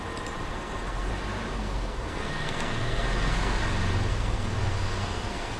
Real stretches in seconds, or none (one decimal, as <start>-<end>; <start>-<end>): 0.0-0.5; 1.1-1.5; 3.6-4.1